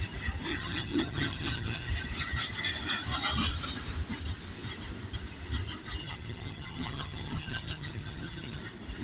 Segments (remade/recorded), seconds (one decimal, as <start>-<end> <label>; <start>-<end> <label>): 0.0-0.5 recorded; 0.5-1.9 remade; 1.9-6.0 recorded; 6.0-8.6 remade; 8.6-9.0 recorded